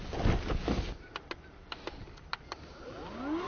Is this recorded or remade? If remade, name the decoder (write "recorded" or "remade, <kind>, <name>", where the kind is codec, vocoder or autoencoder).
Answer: recorded